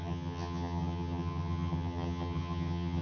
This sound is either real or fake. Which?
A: fake